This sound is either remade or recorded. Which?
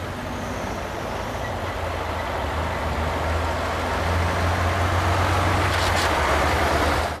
recorded